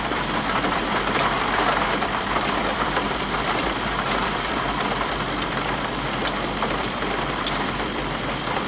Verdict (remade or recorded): remade